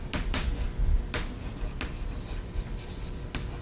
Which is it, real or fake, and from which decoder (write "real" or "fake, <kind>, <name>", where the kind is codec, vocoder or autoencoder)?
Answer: real